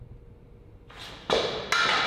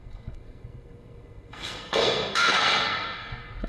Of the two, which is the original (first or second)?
first